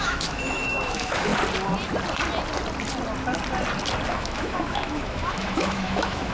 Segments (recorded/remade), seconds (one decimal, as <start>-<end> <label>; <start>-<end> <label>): 0.0-1.3 remade; 1.3-4.1 recorded; 4.1-6.3 remade